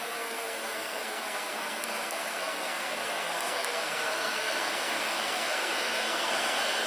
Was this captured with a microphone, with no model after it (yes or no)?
no